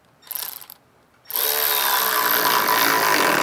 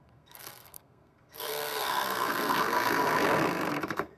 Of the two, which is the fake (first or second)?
second